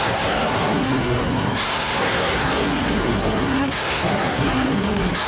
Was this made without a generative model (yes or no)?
no